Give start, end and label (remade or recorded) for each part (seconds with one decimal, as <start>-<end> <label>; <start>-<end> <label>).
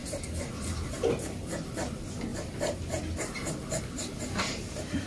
0.0-0.7 remade; 0.7-2.3 recorded; 2.3-3.5 remade; 3.5-5.1 recorded